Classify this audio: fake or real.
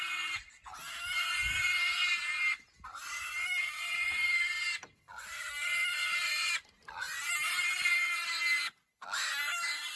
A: real